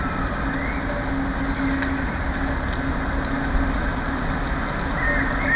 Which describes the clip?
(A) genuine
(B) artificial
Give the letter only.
A